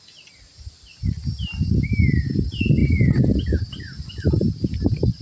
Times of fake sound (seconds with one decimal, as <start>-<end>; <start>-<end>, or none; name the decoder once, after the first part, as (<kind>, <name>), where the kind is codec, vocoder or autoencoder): none